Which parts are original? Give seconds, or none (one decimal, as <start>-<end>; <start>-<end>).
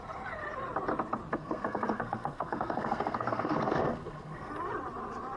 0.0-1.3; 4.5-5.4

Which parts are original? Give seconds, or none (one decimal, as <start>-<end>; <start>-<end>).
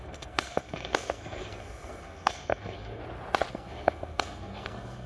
3.0-3.5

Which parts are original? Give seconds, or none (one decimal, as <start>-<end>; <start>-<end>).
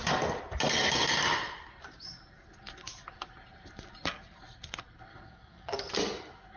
0.0-5.1; 5.9-6.6